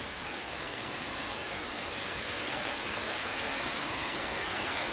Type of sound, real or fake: fake